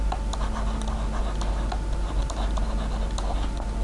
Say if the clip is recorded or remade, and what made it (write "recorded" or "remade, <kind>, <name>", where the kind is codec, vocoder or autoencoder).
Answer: recorded